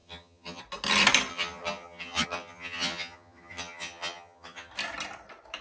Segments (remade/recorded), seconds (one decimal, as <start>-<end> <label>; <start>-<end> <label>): 0.0-0.6 remade; 0.6-1.3 recorded; 1.3-4.7 remade; 4.7-5.6 recorded